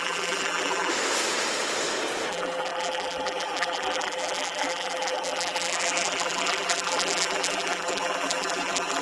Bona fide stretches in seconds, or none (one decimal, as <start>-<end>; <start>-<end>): 0.9-2.3